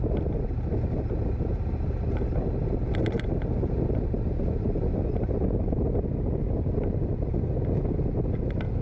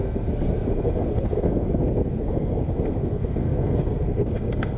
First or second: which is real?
first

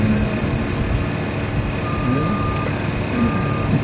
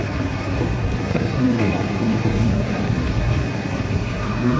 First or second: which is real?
first